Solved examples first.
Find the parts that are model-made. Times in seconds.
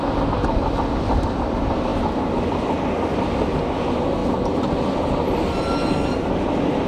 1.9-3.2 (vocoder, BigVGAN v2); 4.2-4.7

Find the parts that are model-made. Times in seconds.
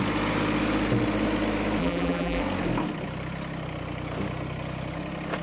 1.8-2.4 (vocoder, BigVGAN v2)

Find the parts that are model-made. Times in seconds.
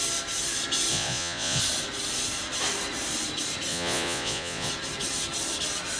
0.9-1.6 (vocoder, Vocos); 3.7-4.7